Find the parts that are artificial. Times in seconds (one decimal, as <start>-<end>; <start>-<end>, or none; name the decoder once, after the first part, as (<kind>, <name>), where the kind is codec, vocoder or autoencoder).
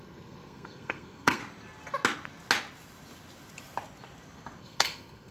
0.0-1.4 (codec, SNAC); 4.6-5.3